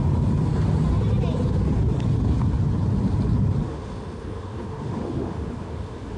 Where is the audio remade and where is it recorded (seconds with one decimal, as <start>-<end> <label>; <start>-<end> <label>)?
0.0-3.7 recorded; 3.7-6.2 remade